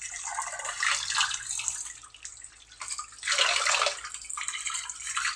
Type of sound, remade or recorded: recorded